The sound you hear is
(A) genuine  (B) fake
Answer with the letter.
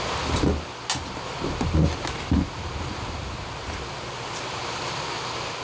A